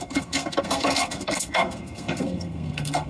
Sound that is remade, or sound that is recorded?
remade